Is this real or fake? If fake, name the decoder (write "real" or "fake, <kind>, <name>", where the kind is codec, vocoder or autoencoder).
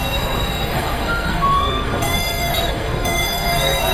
fake, codec, SNAC